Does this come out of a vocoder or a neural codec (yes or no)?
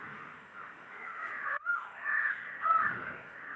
yes